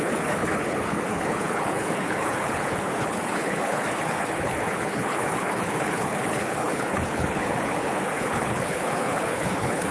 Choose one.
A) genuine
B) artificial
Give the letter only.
B